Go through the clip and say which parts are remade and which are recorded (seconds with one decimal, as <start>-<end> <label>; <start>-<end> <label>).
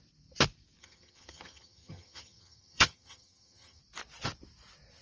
0.0-0.8 recorded; 0.8-3.8 remade; 3.8-5.0 recorded